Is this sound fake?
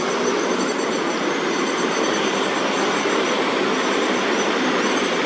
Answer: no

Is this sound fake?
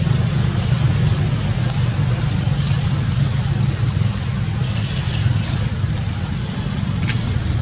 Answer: no